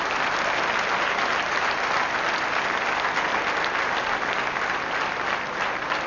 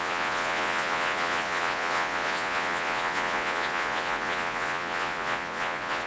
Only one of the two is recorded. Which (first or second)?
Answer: first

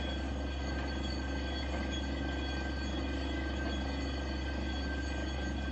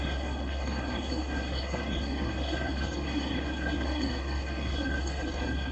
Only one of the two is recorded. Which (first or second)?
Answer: first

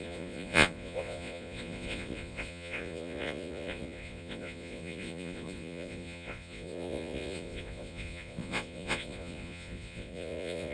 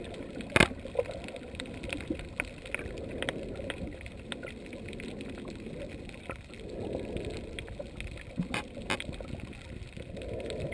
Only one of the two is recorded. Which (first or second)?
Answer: second